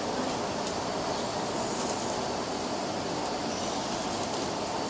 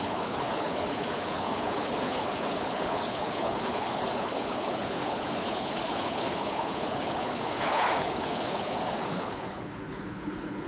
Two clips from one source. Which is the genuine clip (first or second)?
first